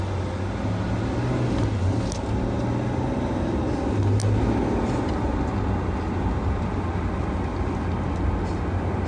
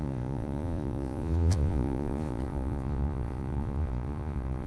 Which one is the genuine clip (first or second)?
first